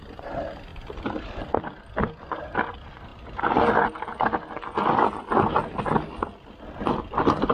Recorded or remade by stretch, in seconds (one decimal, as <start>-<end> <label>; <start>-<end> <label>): 0.0-3.1 remade; 3.1-6.7 recorded; 6.7-7.5 remade